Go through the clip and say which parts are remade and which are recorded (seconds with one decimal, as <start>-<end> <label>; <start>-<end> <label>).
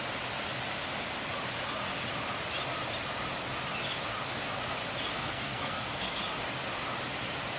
0.0-5.1 recorded; 5.1-6.2 remade; 6.2-7.6 recorded